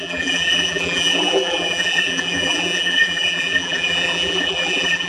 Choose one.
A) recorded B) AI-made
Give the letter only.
B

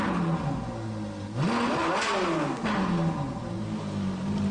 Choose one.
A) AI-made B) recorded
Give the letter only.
B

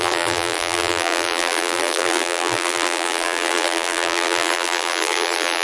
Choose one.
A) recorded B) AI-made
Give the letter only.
B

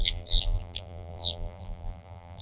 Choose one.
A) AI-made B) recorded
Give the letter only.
A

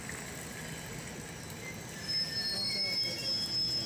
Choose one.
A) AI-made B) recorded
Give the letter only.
B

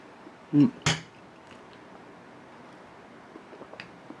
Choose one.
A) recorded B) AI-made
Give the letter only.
A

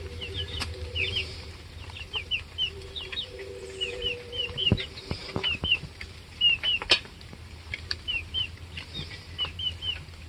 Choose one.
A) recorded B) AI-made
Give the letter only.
B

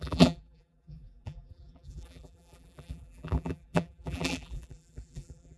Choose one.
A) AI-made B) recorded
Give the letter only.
A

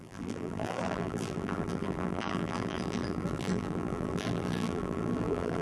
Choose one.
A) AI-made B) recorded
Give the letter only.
A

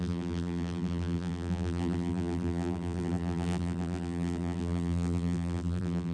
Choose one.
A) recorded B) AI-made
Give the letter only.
B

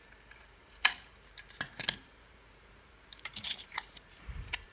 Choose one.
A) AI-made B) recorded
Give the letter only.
A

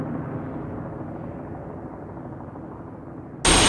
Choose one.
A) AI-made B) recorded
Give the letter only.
B